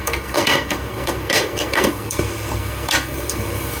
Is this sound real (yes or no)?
no